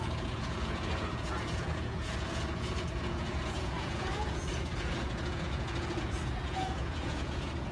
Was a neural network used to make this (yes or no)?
yes